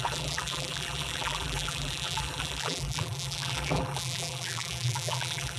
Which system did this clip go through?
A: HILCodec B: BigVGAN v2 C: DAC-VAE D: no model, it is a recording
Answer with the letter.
B